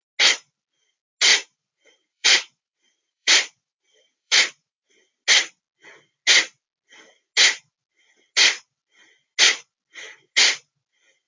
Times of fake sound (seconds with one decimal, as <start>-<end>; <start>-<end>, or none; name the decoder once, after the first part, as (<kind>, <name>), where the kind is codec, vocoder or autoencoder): 1.3-4.9 (vocoder, BigVGAN v2)